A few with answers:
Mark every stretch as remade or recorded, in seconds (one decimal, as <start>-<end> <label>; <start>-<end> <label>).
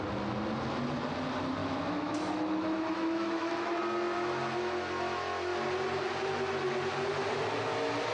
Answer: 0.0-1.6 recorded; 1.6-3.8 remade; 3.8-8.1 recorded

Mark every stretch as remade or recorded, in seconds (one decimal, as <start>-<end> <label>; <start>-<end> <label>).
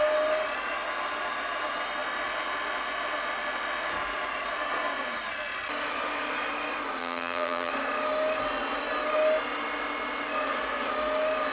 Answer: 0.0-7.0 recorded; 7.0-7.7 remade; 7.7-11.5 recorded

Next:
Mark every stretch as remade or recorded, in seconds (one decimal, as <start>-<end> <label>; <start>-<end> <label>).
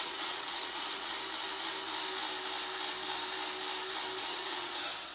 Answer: 0.0-1.1 remade; 1.1-4.2 recorded; 4.2-5.1 remade